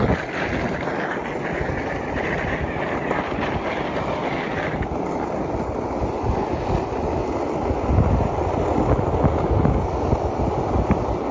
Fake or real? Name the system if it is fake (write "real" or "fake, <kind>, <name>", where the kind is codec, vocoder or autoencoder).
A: real